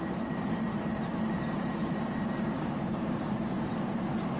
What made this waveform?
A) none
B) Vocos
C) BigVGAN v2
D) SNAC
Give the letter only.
C